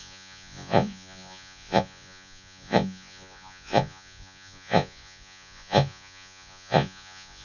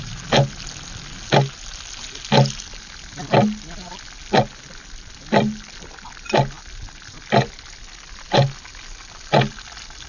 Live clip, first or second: second